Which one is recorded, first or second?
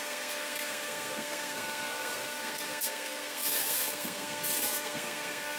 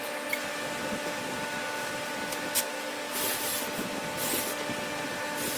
second